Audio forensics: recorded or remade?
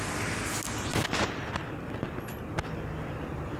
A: recorded